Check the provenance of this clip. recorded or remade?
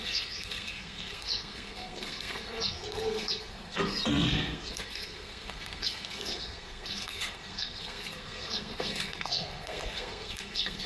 remade